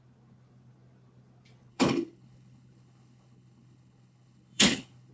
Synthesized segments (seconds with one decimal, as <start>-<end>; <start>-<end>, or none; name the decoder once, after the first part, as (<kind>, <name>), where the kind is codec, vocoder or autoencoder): 1.7-5.1 (codec, HILCodec)